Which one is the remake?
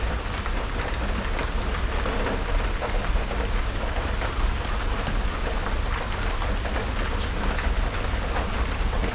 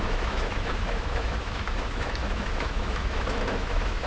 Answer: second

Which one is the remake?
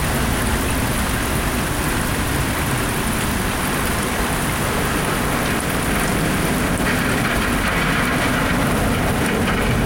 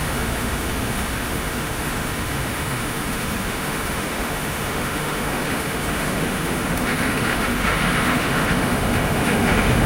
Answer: second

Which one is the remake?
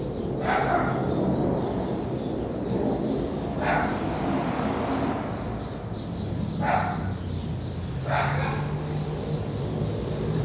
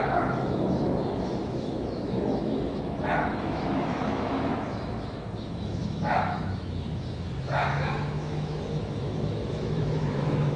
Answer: second